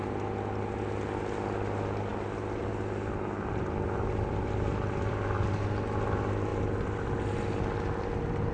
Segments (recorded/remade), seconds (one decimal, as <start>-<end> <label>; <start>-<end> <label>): 0.0-8.5 recorded